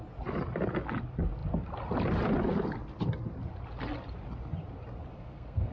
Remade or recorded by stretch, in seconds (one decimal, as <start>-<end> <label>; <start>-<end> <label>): 0.0-5.1 recorded; 5.1-5.7 remade